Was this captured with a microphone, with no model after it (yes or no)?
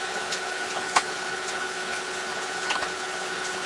no